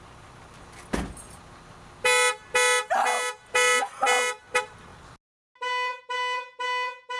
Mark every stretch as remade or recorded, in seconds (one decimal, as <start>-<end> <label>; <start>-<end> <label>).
0.0-7.2 recorded